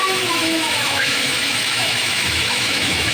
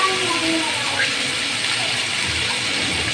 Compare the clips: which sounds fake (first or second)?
first